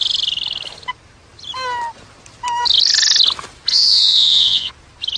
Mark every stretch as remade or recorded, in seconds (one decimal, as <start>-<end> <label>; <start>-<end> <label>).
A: 0.0-3.7 recorded; 3.7-4.7 remade; 4.7-5.2 recorded